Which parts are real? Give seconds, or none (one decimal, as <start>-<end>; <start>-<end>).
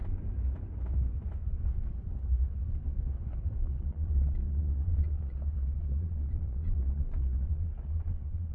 0.0-3.6